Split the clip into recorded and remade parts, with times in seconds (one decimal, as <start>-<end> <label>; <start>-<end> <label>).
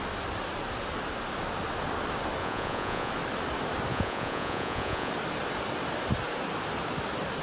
0.0-2.4 recorded; 2.4-3.1 remade; 3.1-3.9 recorded; 3.9-5.1 remade; 5.1-7.4 recorded